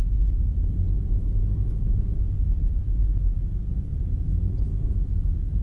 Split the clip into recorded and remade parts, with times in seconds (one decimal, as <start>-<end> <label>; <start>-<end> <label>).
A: 0.0-5.6 recorded